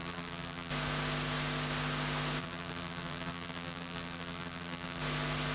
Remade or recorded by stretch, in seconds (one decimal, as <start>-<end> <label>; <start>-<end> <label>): 0.0-0.7 remade; 0.7-2.4 recorded; 2.4-5.0 remade; 5.0-5.5 recorded